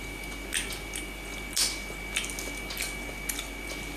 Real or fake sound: real